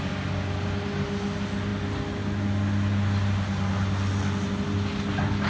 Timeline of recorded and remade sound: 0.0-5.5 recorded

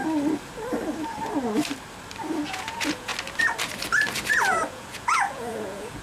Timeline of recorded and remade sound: 0.0-2.5 recorded; 2.5-3.1 remade; 3.1-4.7 recorded; 4.7-6.0 remade